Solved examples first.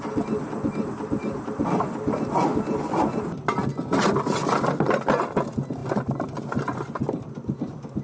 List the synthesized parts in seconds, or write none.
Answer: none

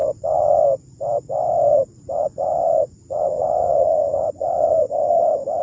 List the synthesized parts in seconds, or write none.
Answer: 0.0-0.6 (vocoder, Vocos); 1.7-5.1

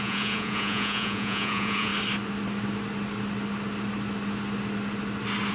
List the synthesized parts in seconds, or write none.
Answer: 0.0-1.9 (vocoder, Vocos)

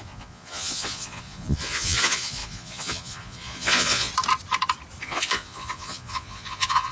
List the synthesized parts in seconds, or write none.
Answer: 0.0-4.1 (vocoder, Vocos); 5.0-6.9

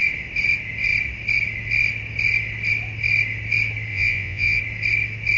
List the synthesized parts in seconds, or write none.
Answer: 3.9-4.6 (vocoder, Vocos)